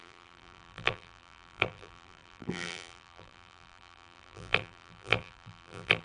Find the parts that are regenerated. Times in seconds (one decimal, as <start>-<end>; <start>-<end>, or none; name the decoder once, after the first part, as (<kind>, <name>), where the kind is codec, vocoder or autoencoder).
0.0-6.0 (vocoder, BigVGAN v2)